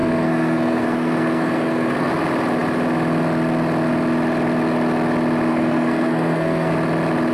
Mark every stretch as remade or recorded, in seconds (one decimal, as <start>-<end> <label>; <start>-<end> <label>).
0.0-2.1 remade; 2.1-5.5 recorded; 5.5-6.7 remade; 6.7-7.3 recorded